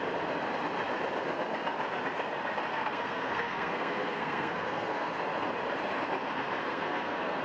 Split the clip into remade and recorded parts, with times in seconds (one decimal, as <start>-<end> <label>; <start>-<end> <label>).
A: 0.0-2.7 recorded; 2.7-5.1 remade; 5.1-6.6 recorded; 6.6-7.4 remade

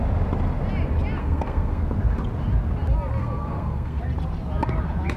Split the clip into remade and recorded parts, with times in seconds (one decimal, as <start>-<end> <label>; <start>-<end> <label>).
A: 0.0-1.2 recorded; 1.2-1.8 remade; 1.8-3.2 recorded; 3.2-4.0 remade; 4.0-5.2 recorded

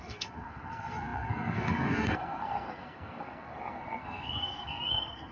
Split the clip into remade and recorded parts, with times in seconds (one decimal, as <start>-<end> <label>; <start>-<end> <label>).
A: 0.0-5.3 remade

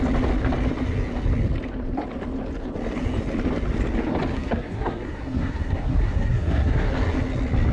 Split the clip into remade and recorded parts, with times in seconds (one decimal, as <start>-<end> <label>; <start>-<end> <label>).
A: 0.0-4.3 recorded; 4.3-6.9 remade; 6.9-7.7 recorded